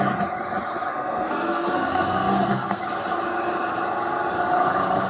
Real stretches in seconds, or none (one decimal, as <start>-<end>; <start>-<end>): 0.0-0.9; 2.8-5.1